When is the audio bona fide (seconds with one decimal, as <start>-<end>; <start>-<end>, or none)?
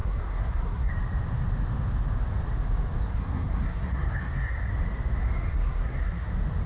0.9-3.1; 4.7-5.5; 6.3-6.7